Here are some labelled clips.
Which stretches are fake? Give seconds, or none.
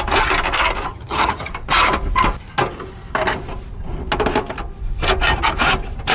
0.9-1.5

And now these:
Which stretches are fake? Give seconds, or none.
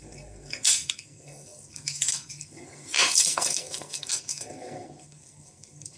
0.0-6.0